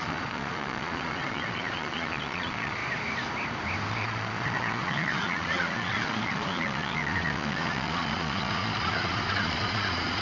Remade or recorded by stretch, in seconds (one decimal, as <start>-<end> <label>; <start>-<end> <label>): 0.0-2.8 remade; 2.8-3.9 recorded; 3.9-10.2 remade